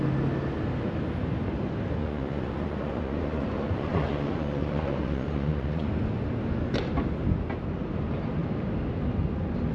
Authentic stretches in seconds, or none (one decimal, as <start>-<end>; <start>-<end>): 0.0-2.0; 5.9-9.7